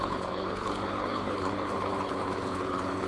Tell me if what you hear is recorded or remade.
remade